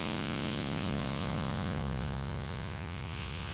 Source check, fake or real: fake